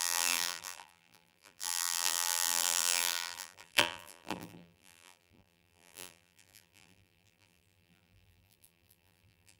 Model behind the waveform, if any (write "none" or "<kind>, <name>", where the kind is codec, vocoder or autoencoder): vocoder, BigVGAN v2